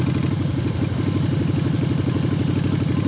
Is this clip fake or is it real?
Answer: real